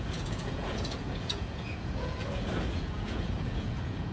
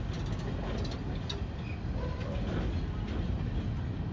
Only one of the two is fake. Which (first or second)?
first